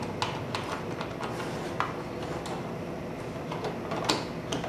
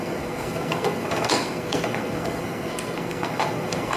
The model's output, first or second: second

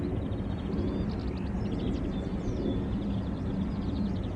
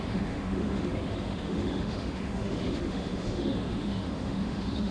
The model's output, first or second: second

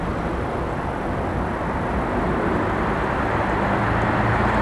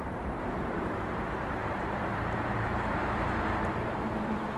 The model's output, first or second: second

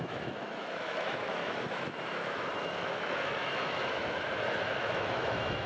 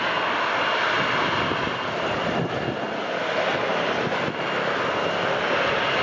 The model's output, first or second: first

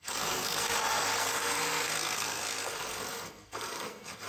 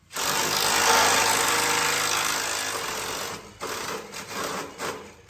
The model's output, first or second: first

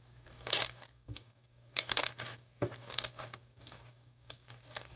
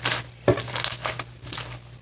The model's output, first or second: first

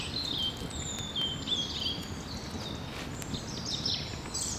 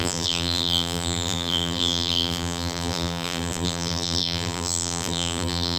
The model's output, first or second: second